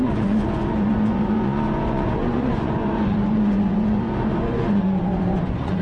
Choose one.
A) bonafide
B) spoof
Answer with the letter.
B